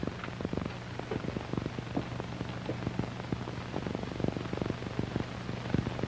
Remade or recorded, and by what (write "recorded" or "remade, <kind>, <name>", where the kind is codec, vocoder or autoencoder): recorded